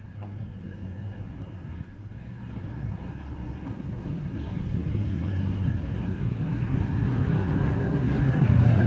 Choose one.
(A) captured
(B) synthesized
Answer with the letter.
B